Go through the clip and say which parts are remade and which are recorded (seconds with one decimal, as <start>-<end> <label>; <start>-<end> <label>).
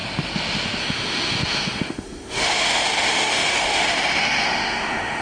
0.0-0.8 recorded; 0.8-5.2 remade